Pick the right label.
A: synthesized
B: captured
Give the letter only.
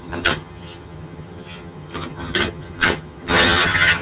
A